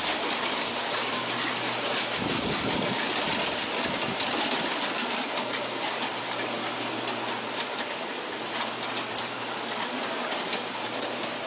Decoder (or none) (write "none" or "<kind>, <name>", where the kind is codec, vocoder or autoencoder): none